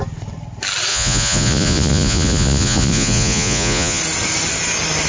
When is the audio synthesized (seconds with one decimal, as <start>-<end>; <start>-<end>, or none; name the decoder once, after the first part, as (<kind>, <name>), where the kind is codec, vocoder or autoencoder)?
0.9-4.0 (vocoder, Vocos)